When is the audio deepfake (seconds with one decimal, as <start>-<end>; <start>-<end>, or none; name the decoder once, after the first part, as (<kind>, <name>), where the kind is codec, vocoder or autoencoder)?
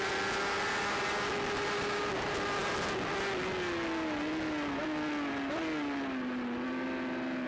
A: none